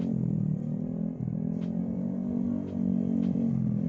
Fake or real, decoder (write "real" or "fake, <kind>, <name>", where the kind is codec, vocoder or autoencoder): real